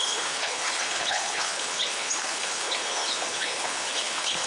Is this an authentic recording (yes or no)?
no